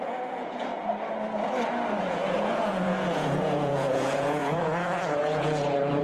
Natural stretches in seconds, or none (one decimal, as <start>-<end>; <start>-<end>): 0.7-2.0